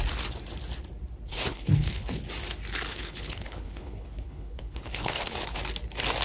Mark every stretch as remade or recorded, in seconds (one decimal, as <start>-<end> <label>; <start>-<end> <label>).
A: 0.0-1.3 recorded; 1.3-2.2 remade; 2.2-2.9 recorded; 2.9-5.6 remade; 5.6-6.2 recorded